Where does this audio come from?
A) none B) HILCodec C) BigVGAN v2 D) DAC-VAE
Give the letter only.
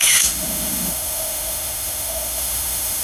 D